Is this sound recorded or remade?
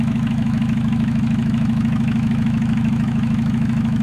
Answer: remade